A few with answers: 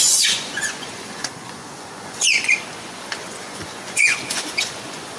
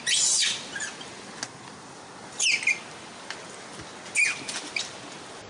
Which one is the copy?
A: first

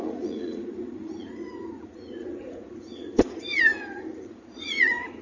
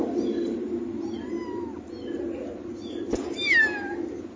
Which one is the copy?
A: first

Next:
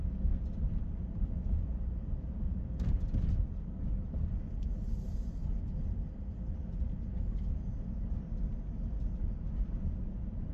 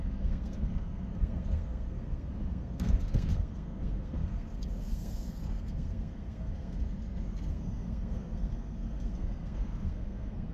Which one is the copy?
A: second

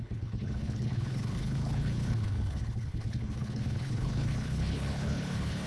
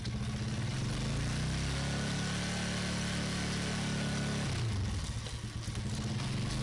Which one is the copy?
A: first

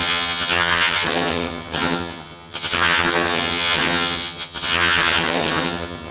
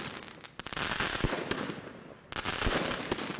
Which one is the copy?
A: first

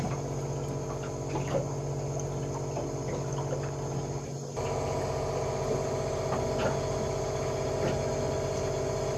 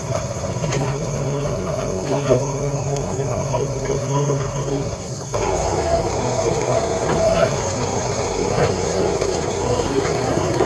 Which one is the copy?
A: second